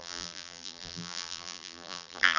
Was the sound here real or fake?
fake